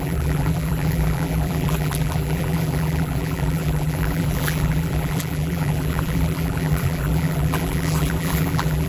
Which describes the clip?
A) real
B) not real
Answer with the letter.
B